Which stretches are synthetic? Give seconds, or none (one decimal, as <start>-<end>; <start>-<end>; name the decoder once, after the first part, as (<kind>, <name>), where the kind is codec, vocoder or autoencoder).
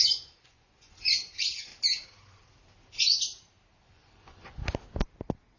0.0-1.7 (vocoder, Vocos); 3.8-4.6